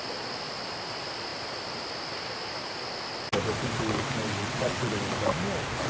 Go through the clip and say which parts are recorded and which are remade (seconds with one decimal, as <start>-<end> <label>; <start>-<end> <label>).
0.0-4.2 recorded; 4.2-4.9 remade; 4.9-5.9 recorded